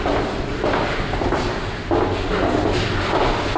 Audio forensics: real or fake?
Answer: real